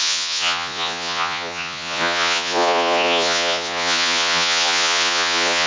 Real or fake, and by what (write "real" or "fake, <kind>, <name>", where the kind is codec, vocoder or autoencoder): fake, vocoder, Vocos